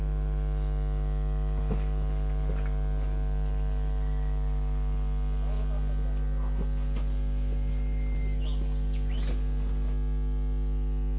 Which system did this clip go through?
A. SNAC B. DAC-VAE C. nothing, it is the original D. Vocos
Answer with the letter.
C